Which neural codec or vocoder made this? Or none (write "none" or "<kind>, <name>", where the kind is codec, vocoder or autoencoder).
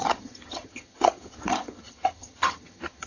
vocoder, HiFi-GAN